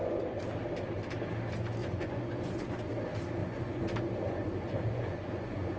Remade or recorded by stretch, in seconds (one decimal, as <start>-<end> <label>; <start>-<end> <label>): 0.0-1.8 recorded; 1.8-2.8 remade; 2.8-3.4 recorded; 3.4-5.8 remade